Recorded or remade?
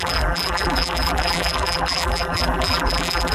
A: remade